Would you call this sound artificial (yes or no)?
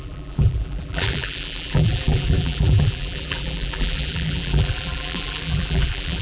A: yes